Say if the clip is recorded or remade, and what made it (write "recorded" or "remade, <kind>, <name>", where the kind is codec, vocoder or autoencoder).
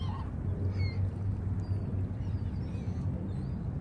recorded